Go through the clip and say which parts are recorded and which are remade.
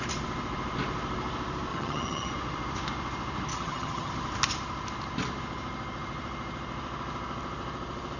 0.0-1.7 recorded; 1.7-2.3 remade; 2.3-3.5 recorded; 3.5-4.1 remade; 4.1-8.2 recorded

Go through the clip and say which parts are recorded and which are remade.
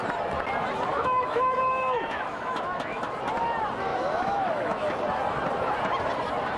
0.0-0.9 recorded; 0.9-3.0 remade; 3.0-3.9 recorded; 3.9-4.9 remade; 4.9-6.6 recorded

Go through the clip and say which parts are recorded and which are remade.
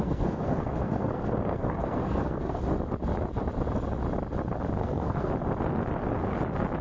0.0-2.6 remade; 2.6-4.8 recorded; 4.8-5.3 remade; 5.3-6.8 recorded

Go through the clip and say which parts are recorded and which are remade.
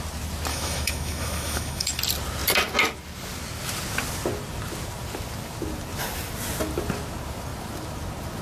0.0-0.5 recorded; 0.5-2.0 remade; 2.0-8.4 recorded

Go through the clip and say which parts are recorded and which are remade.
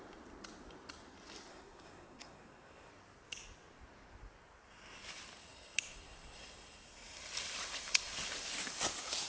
0.0-1.5 recorded; 1.5-2.9 remade; 2.9-9.3 recorded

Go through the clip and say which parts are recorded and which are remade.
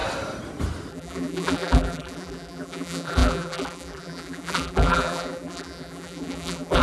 0.0-0.9 recorded; 0.9-6.8 remade